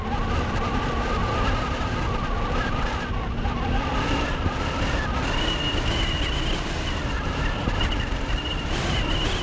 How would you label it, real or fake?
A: fake